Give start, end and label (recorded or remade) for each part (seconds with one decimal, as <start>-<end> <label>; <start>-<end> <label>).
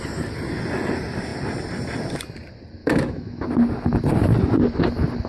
0.0-2.8 recorded; 2.8-3.5 remade; 3.5-5.3 recorded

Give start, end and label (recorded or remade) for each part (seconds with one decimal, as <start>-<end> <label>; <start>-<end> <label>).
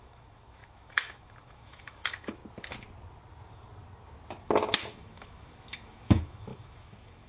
0.0-2.4 remade; 2.4-4.8 recorded; 4.8-7.3 remade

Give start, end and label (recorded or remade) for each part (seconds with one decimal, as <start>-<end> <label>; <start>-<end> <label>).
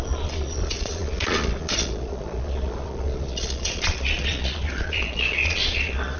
0.0-6.2 remade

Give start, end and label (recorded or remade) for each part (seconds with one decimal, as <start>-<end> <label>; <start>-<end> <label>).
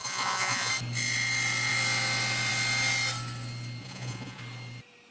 0.0-0.7 remade; 0.7-3.8 recorded; 3.8-4.4 remade; 4.4-5.1 recorded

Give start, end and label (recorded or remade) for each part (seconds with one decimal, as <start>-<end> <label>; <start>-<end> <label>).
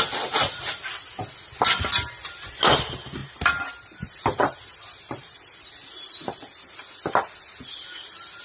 0.0-8.4 recorded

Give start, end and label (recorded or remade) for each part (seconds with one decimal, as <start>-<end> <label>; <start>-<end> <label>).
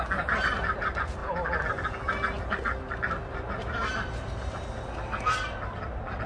0.0-1.2 remade; 1.2-3.0 recorded; 3.0-3.8 remade; 3.8-4.6 recorded; 4.6-6.3 remade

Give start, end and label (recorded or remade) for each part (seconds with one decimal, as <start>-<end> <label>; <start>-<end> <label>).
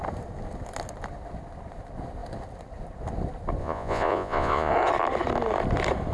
0.0-3.6 recorded; 3.6-4.7 remade; 4.7-6.1 recorded